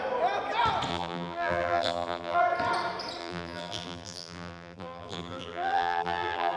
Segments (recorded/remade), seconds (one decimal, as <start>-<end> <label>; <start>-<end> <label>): 0.0-0.9 recorded; 0.9-2.4 remade; 2.4-3.2 recorded; 3.2-6.6 remade